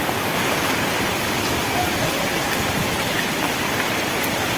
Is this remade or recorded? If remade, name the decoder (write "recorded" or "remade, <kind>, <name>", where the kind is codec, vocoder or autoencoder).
recorded